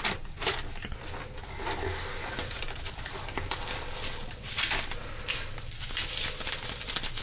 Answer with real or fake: real